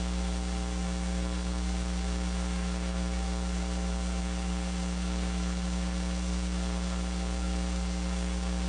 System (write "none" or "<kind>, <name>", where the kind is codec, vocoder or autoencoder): codec, SNAC